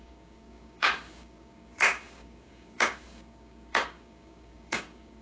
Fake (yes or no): yes